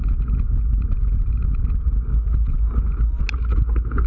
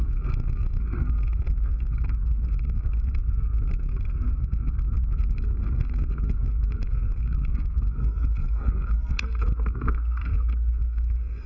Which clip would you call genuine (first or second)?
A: first